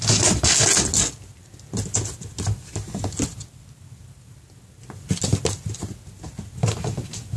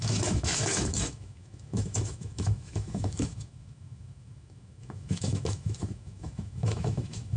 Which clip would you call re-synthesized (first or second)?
second